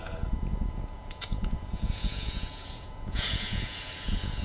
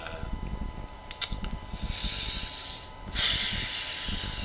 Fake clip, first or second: first